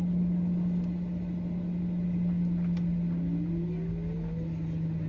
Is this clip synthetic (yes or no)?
no